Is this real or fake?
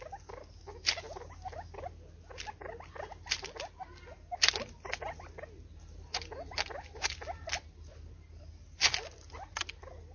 real